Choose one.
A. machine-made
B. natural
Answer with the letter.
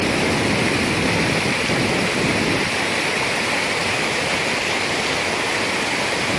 B